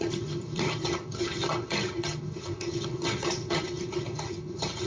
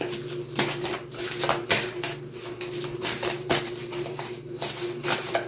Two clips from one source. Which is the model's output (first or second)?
first